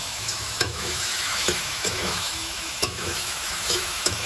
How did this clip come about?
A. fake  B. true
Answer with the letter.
A